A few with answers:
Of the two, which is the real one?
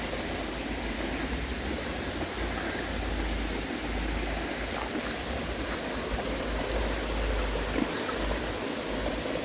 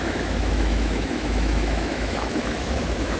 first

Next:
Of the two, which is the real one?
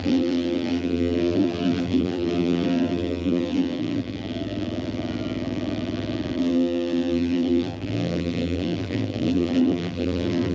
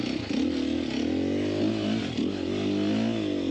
second